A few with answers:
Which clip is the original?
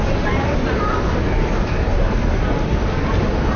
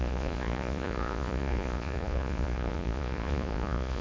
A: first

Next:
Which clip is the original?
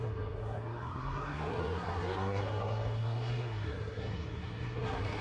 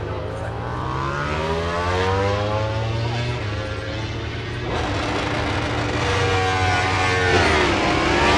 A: second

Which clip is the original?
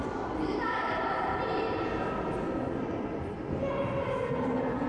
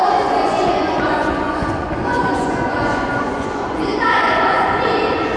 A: first